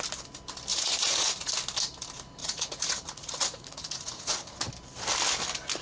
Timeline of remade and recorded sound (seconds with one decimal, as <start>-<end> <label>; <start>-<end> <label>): 0.0-0.7 recorded; 0.7-1.5 remade; 1.5-2.4 recorded; 2.4-4.7 remade; 4.7-5.8 recorded